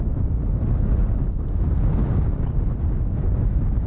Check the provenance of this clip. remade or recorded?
recorded